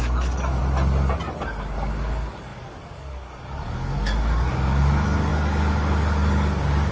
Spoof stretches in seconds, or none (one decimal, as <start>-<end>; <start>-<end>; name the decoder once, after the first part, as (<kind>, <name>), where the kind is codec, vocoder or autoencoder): 0.0-0.6 (codec, DAC); 1.3-6.9